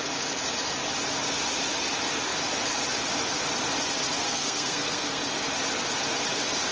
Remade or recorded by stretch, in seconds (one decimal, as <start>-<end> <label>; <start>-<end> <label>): 0.0-4.2 recorded; 4.2-5.2 remade; 5.2-6.7 recorded